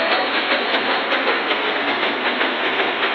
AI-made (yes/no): yes